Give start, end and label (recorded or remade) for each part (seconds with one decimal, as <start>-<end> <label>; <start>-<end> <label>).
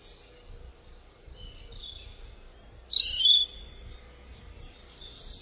0.0-5.4 recorded